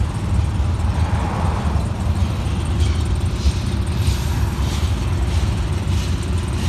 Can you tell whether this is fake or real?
real